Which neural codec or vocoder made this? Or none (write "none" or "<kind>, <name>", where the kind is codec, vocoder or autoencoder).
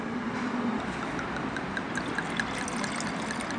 none